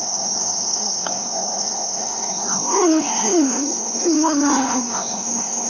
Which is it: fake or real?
fake